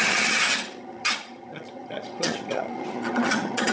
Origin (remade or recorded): remade